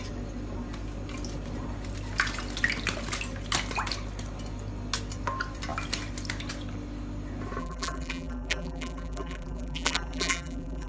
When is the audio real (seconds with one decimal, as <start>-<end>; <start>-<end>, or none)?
0.0-7.6